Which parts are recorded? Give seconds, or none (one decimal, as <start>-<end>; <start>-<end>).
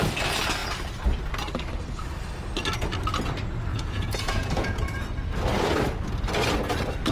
0.0-3.7; 5.0-7.1